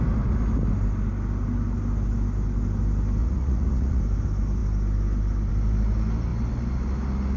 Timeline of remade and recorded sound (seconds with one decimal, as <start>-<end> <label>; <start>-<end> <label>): 0.0-3.2 recorded; 3.2-4.0 remade; 4.0-7.4 recorded